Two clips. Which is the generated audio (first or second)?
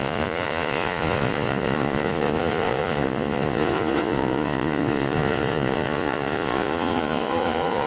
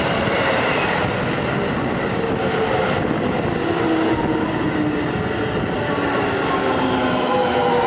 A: first